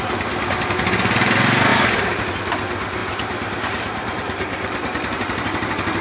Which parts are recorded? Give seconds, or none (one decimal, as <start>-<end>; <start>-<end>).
0.0-1.7; 2.3-3.0